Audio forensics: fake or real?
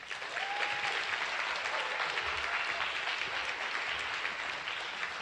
real